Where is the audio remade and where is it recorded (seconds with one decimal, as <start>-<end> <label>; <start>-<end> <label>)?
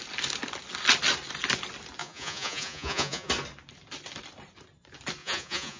0.0-2.0 recorded; 2.0-3.3 remade; 3.3-5.2 recorded; 5.2-5.8 remade